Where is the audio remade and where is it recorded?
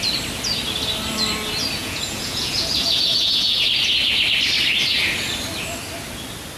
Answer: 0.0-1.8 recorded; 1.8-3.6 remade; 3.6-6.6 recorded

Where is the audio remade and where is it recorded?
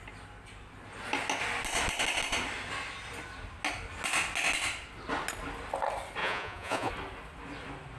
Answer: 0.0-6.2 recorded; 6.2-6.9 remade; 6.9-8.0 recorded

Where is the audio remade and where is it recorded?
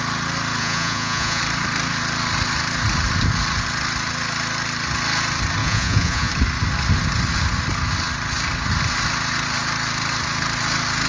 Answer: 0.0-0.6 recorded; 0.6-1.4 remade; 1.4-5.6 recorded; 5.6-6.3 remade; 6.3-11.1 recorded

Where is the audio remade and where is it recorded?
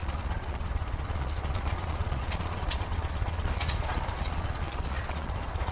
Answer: 0.0-5.7 remade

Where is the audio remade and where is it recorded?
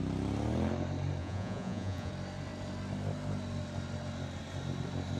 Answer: 0.0-1.2 recorded; 1.2-2.1 remade; 2.1-5.2 recorded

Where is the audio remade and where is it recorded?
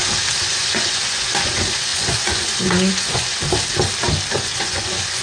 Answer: 0.0-0.5 recorded; 0.5-3.4 remade; 3.4-4.3 recorded; 4.3-5.2 remade